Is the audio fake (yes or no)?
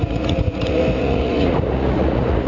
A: yes